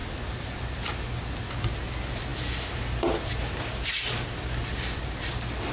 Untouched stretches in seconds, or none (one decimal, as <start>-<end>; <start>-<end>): 0.0-5.7